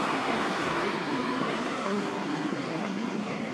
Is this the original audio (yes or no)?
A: no